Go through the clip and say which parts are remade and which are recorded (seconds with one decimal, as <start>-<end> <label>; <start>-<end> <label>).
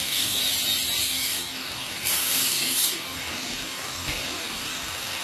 0.0-0.4 remade; 0.4-1.0 recorded; 1.0-5.2 remade